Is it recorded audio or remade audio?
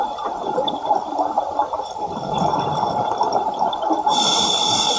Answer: remade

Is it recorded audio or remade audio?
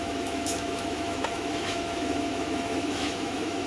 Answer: remade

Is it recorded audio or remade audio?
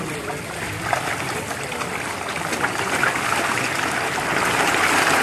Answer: recorded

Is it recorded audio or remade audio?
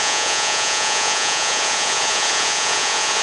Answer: remade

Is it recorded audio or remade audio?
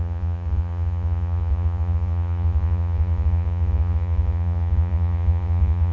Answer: remade